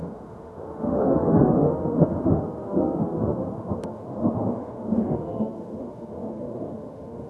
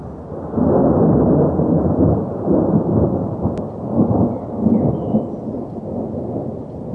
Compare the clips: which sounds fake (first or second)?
first